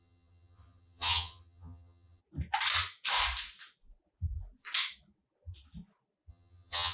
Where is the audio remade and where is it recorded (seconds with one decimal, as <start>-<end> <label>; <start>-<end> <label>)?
0.0-2.2 remade; 2.2-6.3 recorded; 6.3-6.9 remade